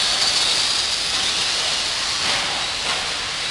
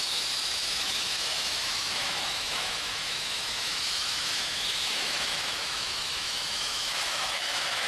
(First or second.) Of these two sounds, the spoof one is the second